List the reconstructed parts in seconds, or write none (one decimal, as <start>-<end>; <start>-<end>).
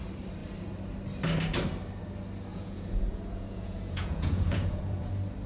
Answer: 2.5-5.1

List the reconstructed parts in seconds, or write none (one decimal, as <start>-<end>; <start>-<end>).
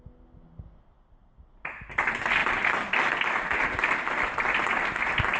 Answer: none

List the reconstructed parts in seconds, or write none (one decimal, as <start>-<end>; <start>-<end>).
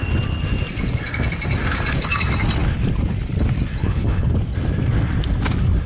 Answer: 3.8-4.3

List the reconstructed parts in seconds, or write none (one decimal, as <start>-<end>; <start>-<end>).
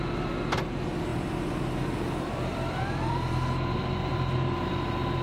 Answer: 1.1-3.3; 4.1-4.7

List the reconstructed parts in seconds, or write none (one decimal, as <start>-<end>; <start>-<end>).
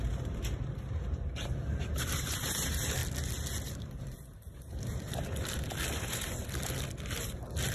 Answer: 0.0-3.0; 3.6-6.4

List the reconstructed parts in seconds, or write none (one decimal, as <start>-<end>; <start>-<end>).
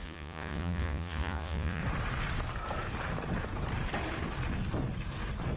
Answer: 0.0-1.8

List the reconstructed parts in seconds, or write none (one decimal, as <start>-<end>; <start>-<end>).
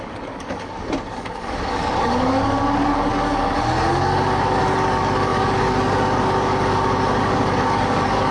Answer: 0.0-8.3